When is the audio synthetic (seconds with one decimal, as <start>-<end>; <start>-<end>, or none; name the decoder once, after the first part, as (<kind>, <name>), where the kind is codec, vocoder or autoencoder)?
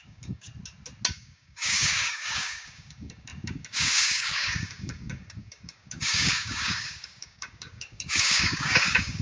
0.0-0.5 (codec, DAC); 1.1-9.2